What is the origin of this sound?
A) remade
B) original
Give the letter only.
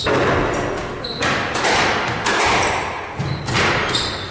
B